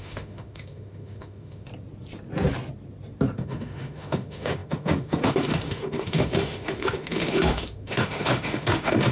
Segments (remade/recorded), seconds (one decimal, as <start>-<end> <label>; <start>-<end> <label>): 0.0-1.7 remade; 1.7-3.4 recorded; 3.4-9.1 remade